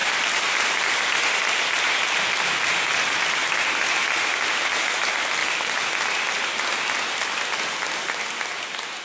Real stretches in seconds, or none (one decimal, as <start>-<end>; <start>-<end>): 0.0-9.0